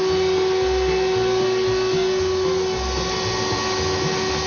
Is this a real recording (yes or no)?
yes